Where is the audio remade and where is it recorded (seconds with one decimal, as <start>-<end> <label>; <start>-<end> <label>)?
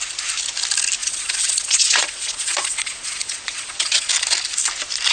0.0-1.0 recorded; 1.0-4.1 remade; 4.1-5.1 recorded